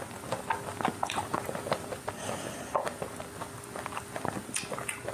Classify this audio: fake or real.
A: real